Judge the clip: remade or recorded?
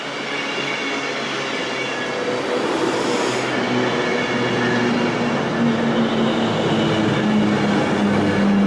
recorded